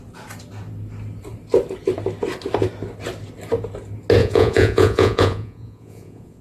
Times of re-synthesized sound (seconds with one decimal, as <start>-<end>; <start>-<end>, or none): 4.2-6.4